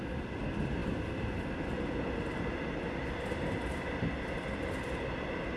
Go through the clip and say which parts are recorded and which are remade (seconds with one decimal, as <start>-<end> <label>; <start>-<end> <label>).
0.0-5.6 recorded

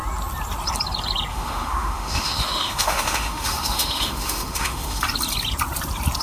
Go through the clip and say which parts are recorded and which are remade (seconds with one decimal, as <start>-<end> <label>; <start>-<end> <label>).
0.0-1.3 recorded; 1.3-5.0 remade; 5.0-6.2 recorded

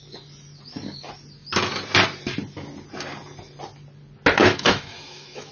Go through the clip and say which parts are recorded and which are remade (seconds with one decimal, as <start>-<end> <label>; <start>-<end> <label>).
0.0-4.4 recorded; 4.4-5.5 remade